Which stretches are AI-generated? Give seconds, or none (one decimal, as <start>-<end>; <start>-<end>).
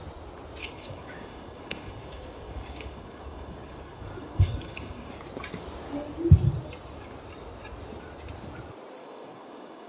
0.6-5.1; 9.0-9.9